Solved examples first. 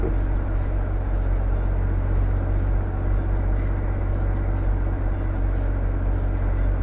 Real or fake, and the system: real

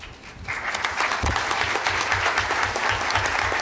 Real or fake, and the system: real